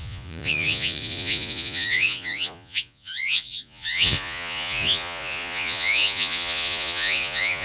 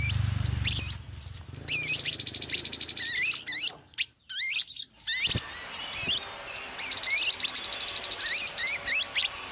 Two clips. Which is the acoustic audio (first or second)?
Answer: second